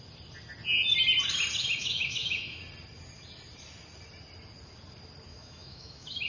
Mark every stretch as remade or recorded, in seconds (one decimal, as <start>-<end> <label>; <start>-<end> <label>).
0.0-1.8 recorded; 1.8-2.6 remade; 2.6-5.3 recorded; 5.3-6.3 remade